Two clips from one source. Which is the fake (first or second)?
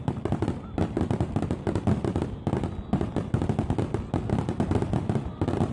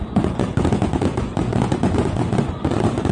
second